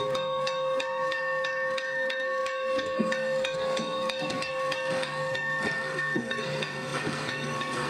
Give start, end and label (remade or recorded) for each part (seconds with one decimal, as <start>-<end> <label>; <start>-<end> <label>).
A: 0.0-7.9 remade